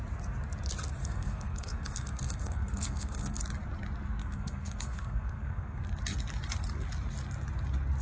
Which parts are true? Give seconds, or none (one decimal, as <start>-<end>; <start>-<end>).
0.0-1.0; 3.4-4.2; 5.8-8.0